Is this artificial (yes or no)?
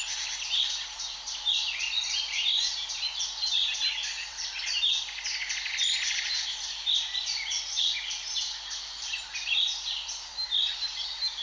yes